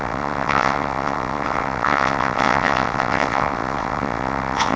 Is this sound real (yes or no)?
no